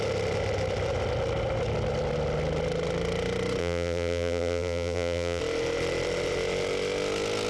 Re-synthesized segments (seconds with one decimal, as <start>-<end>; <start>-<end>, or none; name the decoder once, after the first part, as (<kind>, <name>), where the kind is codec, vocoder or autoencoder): 3.6-5.4 (vocoder, BigVGAN v2)